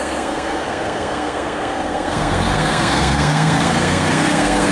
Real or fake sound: fake